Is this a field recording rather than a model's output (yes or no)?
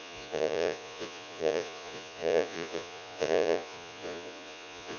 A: no